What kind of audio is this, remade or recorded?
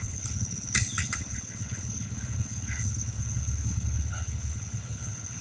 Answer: remade